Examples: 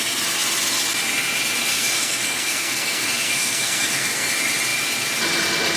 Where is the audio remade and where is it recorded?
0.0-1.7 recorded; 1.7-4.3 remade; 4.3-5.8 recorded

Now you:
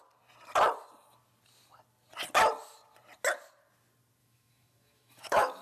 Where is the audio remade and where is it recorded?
0.0-4.2 recorded; 4.2-5.6 remade

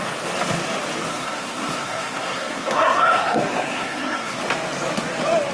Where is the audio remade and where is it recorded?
0.0-1.1 recorded; 1.1-4.4 remade; 4.4-5.5 recorded

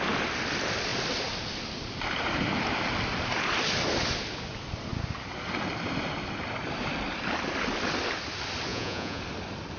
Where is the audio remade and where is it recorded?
0.0-8.7 recorded; 8.7-9.2 remade; 9.2-9.8 recorded

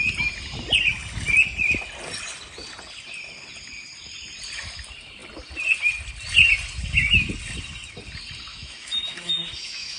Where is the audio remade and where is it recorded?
0.0-8.5 recorded; 8.5-10.0 remade